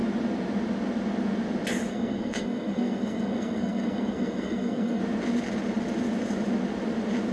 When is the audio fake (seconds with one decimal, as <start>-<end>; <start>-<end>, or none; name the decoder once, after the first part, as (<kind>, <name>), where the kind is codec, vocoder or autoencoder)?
1.9-5.0 (codec, SNAC)

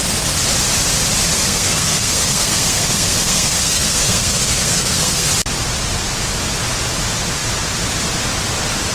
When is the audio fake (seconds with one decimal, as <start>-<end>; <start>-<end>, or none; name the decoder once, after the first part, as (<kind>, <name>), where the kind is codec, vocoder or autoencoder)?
1.3-5.3 (codec, SNAC)

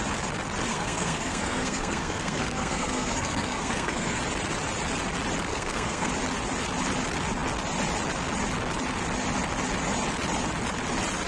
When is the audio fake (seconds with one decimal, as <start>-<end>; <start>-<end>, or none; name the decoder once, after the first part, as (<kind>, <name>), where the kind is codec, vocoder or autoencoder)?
0.7-4.2 (codec, SNAC); 5.5-6.1

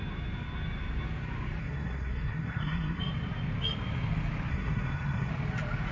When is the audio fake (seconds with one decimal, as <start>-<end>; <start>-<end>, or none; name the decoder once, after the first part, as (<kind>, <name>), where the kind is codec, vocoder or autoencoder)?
1.6-3.0 (codec, SNAC); 4.5-5.3

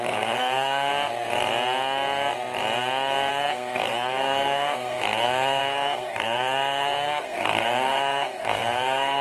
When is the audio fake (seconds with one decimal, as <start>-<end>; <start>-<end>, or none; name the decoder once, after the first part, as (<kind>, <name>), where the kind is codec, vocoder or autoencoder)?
0.0-0.9 (codec, SNAC); 3.3-9.2

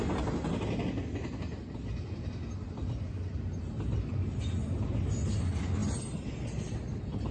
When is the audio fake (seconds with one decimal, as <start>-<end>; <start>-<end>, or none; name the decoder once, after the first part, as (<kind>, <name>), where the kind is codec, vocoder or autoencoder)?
none

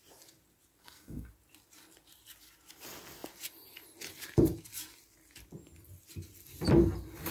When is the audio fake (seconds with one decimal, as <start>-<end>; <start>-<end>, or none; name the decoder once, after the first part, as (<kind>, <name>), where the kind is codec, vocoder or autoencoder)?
0.8-1.3 (codec, SNAC)

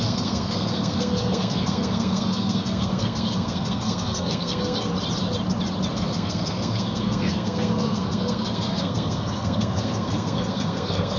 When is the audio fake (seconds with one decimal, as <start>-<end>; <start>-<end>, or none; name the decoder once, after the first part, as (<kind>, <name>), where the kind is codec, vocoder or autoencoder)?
0.0-4.9 (codec, SNAC); 5.9-11.2